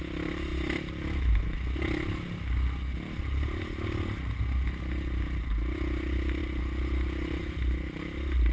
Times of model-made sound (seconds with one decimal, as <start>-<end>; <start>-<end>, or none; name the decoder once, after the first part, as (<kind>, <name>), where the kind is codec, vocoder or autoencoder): none